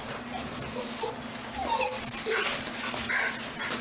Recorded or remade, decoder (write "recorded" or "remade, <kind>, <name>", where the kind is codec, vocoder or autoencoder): recorded